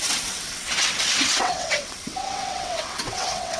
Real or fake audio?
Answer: fake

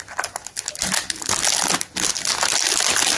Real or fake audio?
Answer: real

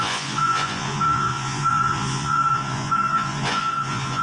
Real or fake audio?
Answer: fake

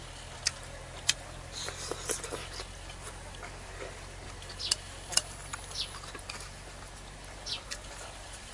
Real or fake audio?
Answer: real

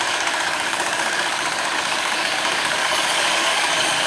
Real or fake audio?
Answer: fake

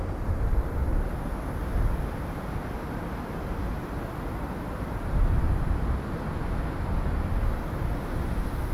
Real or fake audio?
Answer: real